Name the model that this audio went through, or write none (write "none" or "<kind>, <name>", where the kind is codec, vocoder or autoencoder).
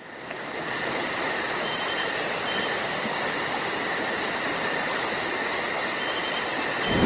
none